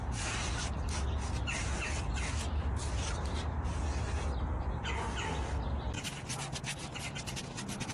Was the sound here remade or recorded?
recorded